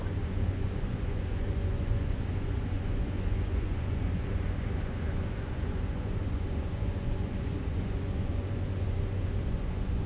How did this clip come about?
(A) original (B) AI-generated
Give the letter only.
B